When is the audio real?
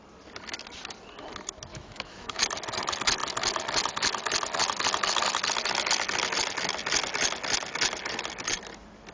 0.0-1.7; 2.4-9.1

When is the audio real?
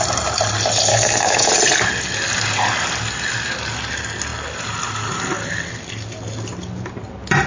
0.0-0.9; 1.5-7.5